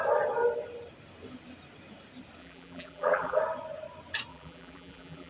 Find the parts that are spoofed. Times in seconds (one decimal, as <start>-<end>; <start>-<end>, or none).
2.4-3.4; 4.3-5.3